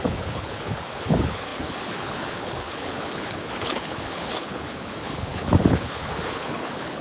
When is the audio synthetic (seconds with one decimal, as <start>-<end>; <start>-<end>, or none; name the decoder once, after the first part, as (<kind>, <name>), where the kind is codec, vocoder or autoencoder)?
0.0-7.0 (codec, HILCodec)